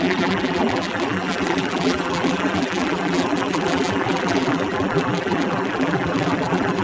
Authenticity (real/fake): fake